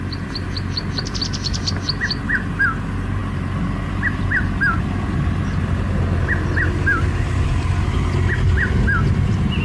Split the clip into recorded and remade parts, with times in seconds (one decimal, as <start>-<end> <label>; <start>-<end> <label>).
0.0-9.6 recorded